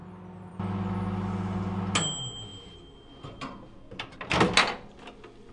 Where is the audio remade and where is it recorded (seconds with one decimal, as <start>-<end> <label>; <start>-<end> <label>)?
0.0-5.5 recorded